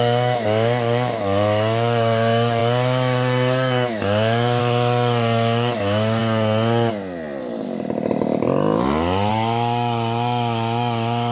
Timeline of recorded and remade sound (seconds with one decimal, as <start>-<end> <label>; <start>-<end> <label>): 0.0-6.2 remade; 6.2-9.3 recorded; 9.3-11.3 remade